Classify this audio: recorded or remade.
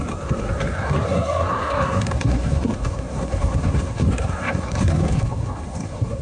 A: remade